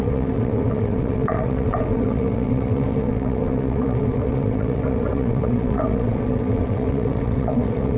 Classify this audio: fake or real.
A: fake